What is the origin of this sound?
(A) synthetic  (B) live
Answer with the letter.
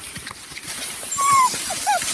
A